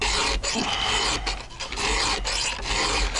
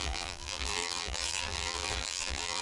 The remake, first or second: second